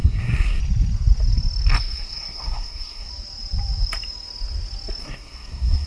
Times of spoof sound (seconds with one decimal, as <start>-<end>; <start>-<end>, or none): 0.0-0.6; 1.8-3.1; 5.0-5.9